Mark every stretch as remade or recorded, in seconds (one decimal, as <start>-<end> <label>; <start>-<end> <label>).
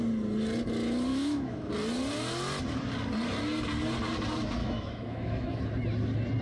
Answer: 0.0-1.1 recorded; 1.1-1.7 remade; 1.7-4.6 recorded; 4.6-5.6 remade; 5.6-6.4 recorded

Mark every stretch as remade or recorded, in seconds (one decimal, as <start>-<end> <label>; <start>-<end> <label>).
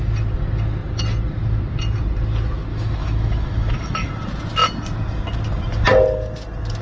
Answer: 0.0-2.7 recorded; 2.7-4.1 remade; 4.1-6.8 recorded